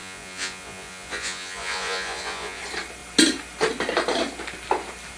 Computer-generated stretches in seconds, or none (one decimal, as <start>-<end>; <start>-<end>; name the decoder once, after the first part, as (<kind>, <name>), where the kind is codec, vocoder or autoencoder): 0.0-2.6 (vocoder, Vocos)